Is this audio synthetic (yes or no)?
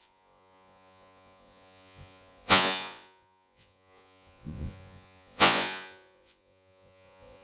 yes